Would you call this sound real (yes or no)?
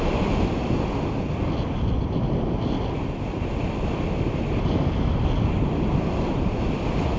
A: yes